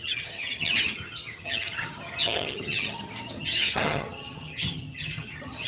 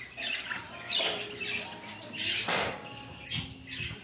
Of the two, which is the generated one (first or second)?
first